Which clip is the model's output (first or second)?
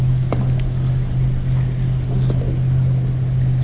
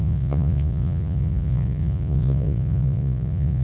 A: second